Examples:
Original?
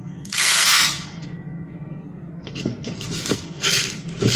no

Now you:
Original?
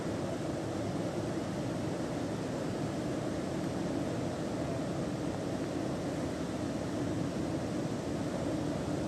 yes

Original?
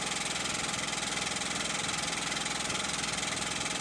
yes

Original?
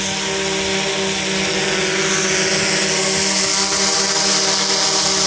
yes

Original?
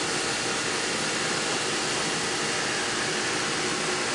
yes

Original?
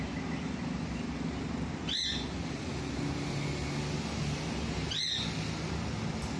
yes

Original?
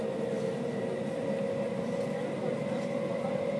yes